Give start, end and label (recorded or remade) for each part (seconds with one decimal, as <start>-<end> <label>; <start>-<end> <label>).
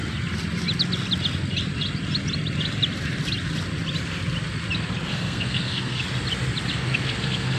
0.0-5.1 recorded; 5.1-6.0 remade; 6.0-6.7 recorded; 6.7-7.6 remade